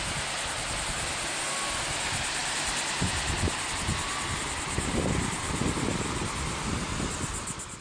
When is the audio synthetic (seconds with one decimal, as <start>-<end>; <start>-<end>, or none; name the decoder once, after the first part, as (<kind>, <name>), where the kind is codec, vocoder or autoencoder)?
2.4-6.2 (vocoder, BigVGAN v2)